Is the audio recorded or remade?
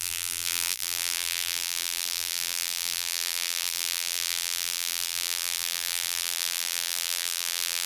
remade